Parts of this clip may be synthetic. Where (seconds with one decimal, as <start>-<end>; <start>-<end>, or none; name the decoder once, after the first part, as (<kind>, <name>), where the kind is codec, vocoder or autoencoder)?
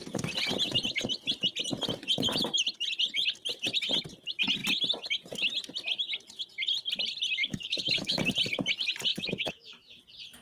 7.4-8.2 (autoencoder, DAC-VAE); 9.1-10.0